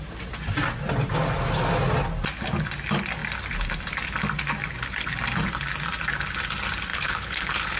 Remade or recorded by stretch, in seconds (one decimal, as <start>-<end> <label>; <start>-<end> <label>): 0.0-6.9 recorded; 6.9-7.8 remade